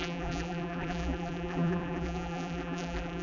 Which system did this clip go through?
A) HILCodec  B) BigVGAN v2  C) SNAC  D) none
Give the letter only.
B